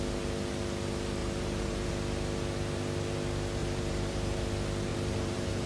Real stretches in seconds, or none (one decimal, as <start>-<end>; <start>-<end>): 0.0-1.2; 1.9-3.6; 4.5-4.9